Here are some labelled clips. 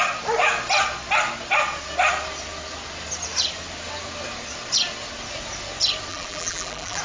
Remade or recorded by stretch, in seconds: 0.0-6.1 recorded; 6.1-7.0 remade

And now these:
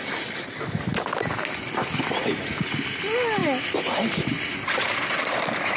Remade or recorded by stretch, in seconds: 0.0-5.8 recorded

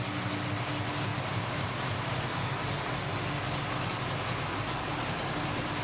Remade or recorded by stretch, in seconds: 0.0-1.1 recorded; 1.1-2.2 remade; 2.2-5.8 recorded

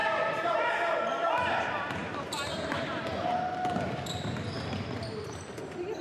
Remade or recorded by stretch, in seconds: 0.0-0.7 remade; 0.7-2.0 recorded; 2.0-3.0 remade; 3.0-6.0 recorded

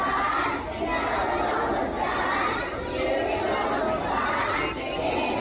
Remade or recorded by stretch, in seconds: 0.0-0.9 remade; 0.9-4.1 recorded; 4.1-5.4 remade

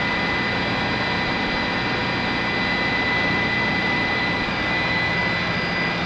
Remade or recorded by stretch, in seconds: 0.0-2.0 remade; 2.0-2.9 recorded; 2.9-5.2 remade; 5.2-6.1 recorded

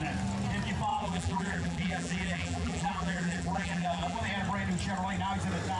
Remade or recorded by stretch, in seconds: 0.0-0.9 recorded; 0.9-4.2 remade; 4.2-5.8 recorded

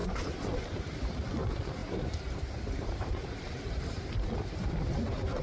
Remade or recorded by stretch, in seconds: 0.0-0.8 remade; 0.8-1.8 recorded; 1.8-5.0 remade; 5.0-5.4 recorded